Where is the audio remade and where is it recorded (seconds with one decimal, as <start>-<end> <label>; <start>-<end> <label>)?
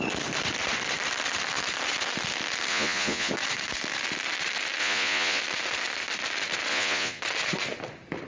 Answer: 0.0-2.7 recorded; 2.7-3.3 remade; 3.3-4.8 recorded; 4.8-5.4 remade; 5.4-6.7 recorded; 6.7-7.2 remade; 7.2-8.3 recorded